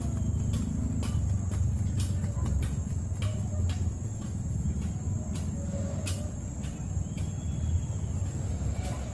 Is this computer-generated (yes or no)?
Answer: no